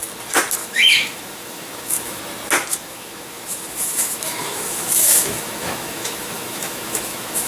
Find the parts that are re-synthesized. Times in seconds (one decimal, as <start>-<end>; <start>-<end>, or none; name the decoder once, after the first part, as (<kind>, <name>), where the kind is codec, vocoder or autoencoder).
0.6-2.2 (autoencoder, DAC-VAE); 2.7-7.5